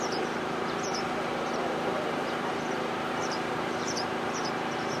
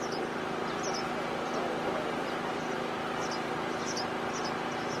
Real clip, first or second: second